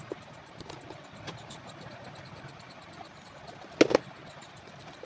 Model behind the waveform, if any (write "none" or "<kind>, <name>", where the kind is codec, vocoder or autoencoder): none